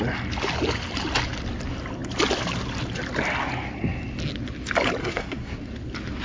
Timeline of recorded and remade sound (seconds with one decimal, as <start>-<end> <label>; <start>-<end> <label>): 0.0-5.0 recorded; 5.0-5.6 remade; 5.6-6.2 recorded